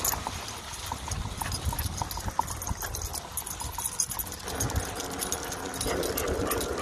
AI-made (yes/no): no